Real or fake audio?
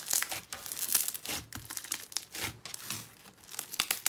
real